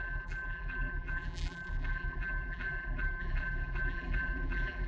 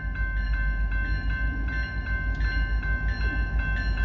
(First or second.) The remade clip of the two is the first